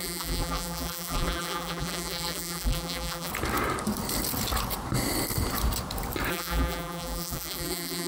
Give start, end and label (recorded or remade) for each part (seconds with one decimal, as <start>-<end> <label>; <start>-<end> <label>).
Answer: 0.0-3.3 remade; 3.3-6.3 recorded; 6.3-8.1 remade